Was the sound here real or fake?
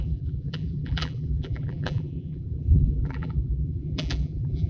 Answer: fake